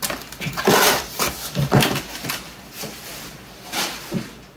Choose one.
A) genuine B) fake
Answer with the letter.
A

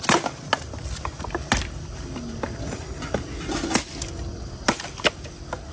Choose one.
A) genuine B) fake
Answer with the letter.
A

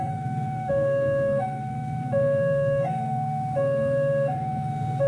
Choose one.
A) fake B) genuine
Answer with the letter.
A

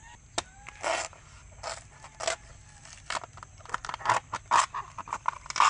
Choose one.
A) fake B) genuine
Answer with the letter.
B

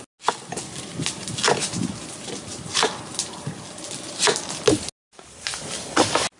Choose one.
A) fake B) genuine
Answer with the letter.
B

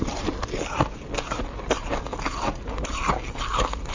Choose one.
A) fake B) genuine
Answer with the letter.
B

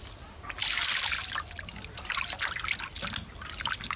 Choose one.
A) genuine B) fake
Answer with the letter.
A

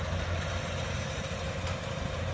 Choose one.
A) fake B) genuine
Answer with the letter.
B